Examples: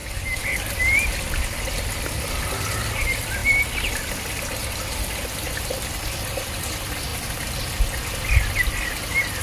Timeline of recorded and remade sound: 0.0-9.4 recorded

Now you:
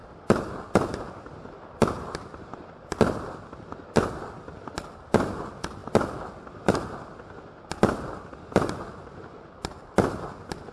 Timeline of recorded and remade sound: 0.0-10.7 recorded

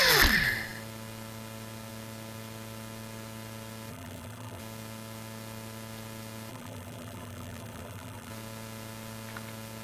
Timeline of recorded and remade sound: 0.0-3.9 recorded; 3.9-4.6 remade; 4.6-6.5 recorded; 6.5-8.3 remade; 8.3-9.8 recorded

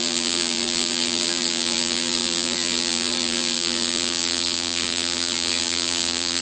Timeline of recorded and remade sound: 0.0-6.4 remade

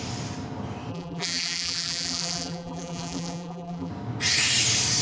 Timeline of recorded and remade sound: 0.0-0.9 recorded; 0.9-3.9 remade; 3.9-5.0 recorded

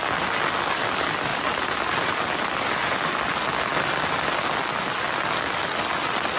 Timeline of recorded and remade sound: 0.0-1.3 recorded; 1.3-3.3 remade; 3.3-6.4 recorded

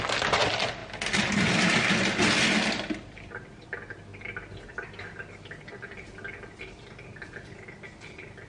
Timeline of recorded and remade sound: 0.0-8.5 recorded

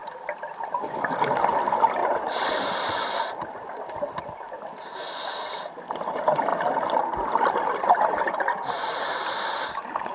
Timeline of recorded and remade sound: 0.0-0.5 remade; 0.5-2.0 recorded; 2.0-4.5 remade; 4.5-10.1 recorded